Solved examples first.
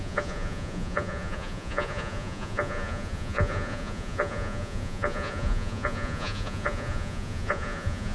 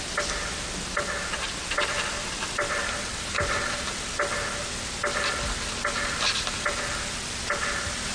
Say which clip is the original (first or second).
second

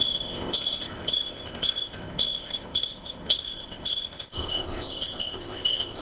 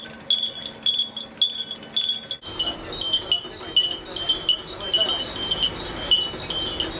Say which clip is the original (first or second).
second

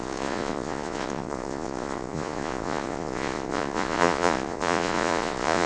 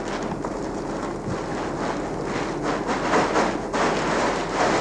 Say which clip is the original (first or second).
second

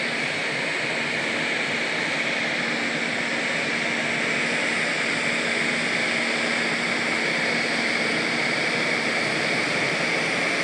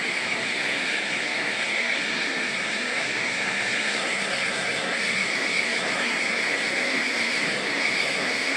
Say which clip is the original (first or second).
first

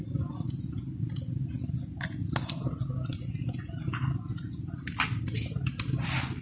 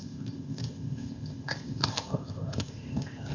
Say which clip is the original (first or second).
first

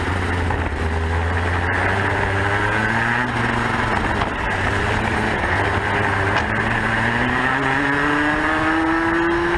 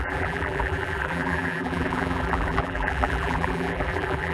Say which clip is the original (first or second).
first